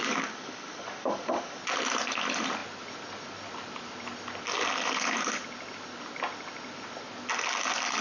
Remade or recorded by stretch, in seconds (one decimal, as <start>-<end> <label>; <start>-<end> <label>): 0.0-1.6 remade; 1.6-8.0 recorded